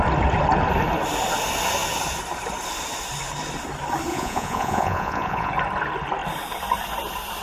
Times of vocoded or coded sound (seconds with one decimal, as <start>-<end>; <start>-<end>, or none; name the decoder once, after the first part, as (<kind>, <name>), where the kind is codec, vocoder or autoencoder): 4.1-5.5 (vocoder, Vocos)